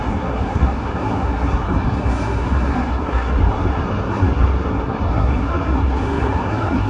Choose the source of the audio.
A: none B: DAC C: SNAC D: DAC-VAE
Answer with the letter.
C